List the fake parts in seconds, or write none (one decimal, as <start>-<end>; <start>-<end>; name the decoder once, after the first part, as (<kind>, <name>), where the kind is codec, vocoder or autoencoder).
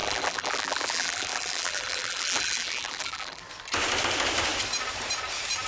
0.0-3.4 (vocoder, BigVGAN v2)